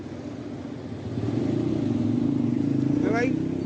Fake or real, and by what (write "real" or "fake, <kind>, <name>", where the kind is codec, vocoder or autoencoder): real